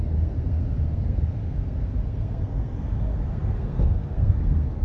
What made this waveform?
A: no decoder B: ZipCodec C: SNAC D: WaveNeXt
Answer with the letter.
C